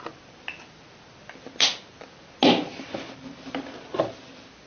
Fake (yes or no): no